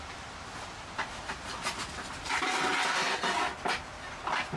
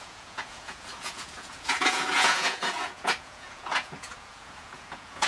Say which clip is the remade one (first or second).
second